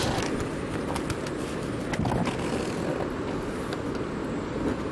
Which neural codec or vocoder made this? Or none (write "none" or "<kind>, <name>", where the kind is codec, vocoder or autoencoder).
none